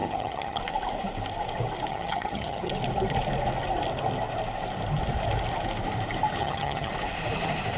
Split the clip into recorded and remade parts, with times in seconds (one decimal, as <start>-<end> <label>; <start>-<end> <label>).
0.0-0.6 remade; 0.6-1.9 recorded; 1.9-2.7 remade; 2.7-6.4 recorded; 6.4-6.9 remade; 6.9-7.8 recorded